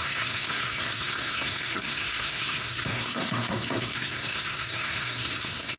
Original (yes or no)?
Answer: no